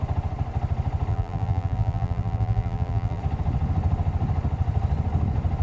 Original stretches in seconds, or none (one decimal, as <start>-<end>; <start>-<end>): 0.0-1.1; 3.2-5.6